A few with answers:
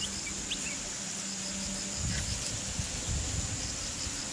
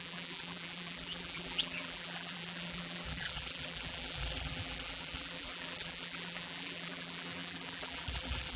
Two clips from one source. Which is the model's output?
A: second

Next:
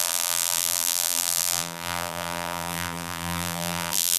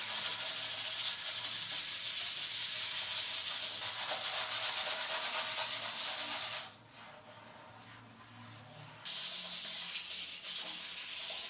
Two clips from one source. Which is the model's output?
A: first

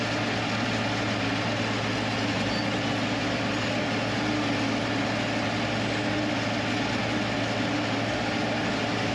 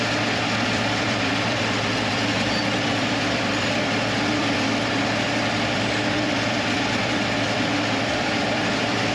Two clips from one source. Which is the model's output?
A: second